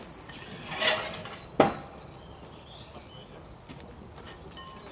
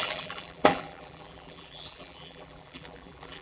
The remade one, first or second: second